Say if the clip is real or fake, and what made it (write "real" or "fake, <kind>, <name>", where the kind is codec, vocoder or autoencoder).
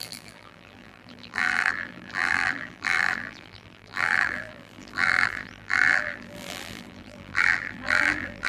fake, vocoder, BigVGAN v2